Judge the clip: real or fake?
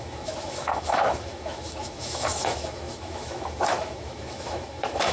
fake